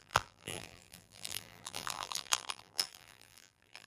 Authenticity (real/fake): fake